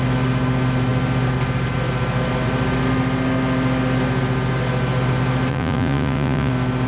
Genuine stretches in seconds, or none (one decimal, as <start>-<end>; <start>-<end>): 0.0-5.5; 6.5-6.9